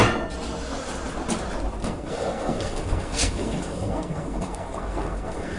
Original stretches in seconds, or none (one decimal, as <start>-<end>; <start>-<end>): 0.0-1.8